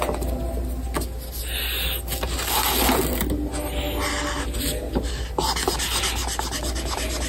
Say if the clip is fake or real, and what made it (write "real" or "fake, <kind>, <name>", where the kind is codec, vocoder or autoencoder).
real